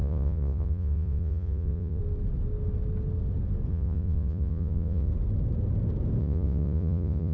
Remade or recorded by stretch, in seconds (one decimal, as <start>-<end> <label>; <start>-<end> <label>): 0.0-2.0 remade; 2.0-3.7 recorded; 3.7-5.1 remade; 5.1-6.2 recorded; 6.2-7.3 remade